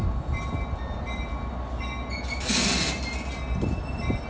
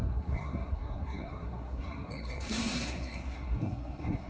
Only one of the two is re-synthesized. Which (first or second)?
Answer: second